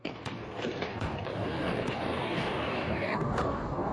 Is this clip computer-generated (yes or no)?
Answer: yes